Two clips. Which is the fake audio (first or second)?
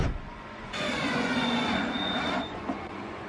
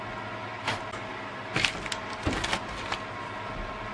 first